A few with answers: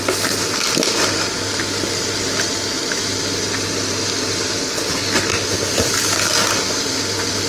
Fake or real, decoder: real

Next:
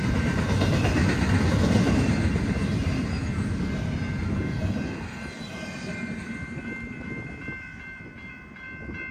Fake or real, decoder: real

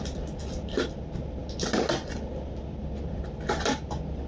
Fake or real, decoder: real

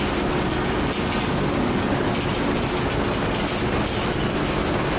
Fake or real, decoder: real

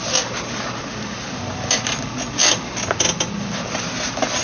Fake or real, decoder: real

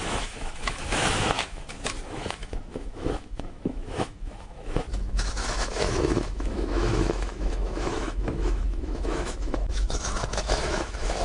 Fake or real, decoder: fake, autoencoder, DAC-VAE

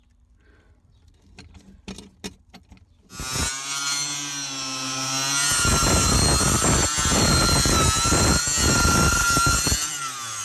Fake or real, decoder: real